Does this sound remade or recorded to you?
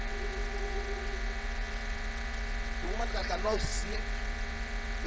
remade